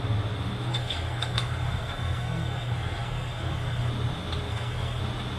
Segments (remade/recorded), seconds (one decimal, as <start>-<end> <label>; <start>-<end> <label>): 0.0-0.7 recorded; 0.7-3.9 remade; 3.9-4.5 recorded; 4.5-5.0 remade; 5.0-5.4 recorded